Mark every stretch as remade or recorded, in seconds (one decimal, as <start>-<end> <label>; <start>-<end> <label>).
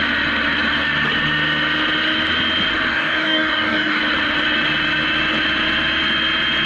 0.0-2.9 recorded; 2.9-4.0 remade; 4.0-6.7 recorded